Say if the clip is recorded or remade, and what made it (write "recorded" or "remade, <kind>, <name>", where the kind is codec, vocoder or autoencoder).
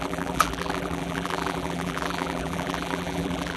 remade, vocoder, BigVGAN v2